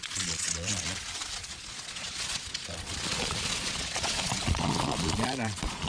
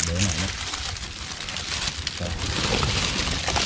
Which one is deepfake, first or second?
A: first